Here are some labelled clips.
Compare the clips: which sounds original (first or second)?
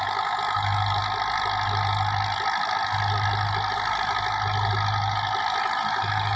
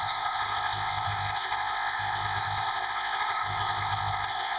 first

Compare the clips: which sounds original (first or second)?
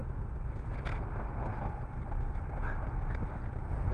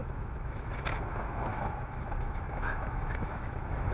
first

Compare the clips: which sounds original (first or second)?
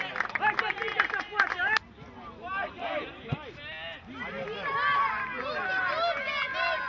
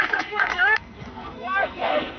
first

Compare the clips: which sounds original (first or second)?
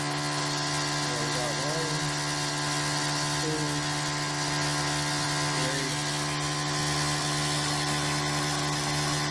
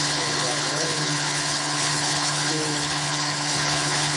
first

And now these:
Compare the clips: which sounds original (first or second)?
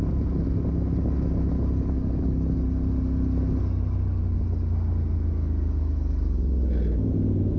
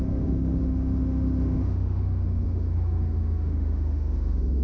first